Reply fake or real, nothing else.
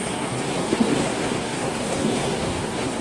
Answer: fake